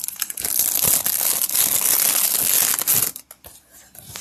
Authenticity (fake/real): real